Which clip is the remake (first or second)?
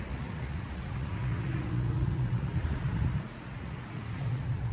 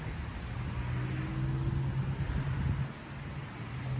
first